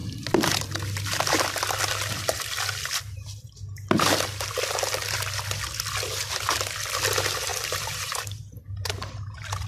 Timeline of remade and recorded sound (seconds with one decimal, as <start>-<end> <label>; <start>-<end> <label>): 0.0-7.5 recorded; 7.5-9.7 remade